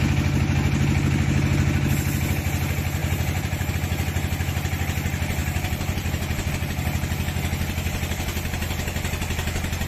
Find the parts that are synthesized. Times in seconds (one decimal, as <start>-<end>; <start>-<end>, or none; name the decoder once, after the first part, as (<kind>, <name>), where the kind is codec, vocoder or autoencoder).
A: 3.0-3.7 (vocoder, BigVGAN v2); 5.4-6.5